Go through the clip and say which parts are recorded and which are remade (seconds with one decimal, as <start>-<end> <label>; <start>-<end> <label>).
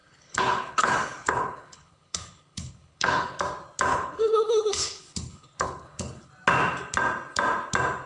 0.0-3.4 remade; 3.4-3.9 recorded; 3.9-6.3 remade; 6.3-8.1 recorded